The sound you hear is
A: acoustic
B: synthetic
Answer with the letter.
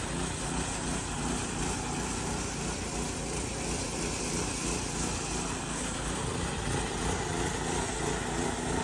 A